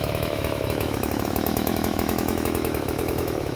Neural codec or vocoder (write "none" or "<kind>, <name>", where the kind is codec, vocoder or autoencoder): autoencoder, DAC-VAE